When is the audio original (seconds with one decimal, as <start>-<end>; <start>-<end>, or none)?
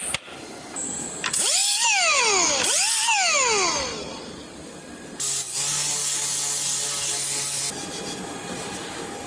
0.0-9.3